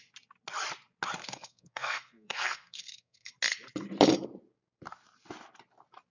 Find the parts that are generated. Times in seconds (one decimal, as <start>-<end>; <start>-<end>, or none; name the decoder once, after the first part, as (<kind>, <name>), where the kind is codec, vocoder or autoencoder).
1.2-3.3 (codec, SNAC)